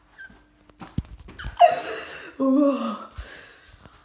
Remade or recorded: recorded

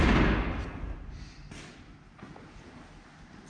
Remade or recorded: recorded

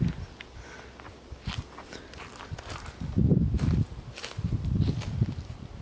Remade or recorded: recorded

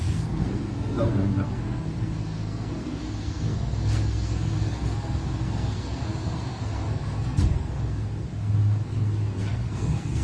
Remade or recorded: remade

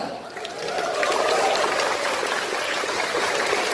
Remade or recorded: remade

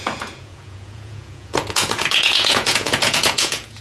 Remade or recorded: remade